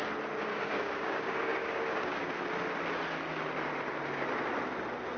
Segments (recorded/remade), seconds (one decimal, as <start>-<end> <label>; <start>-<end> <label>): 0.0-0.5 recorded; 0.5-2.3 remade; 2.3-5.2 recorded